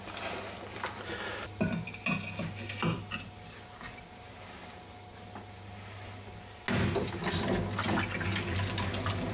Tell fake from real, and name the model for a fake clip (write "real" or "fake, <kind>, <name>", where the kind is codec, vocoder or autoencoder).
real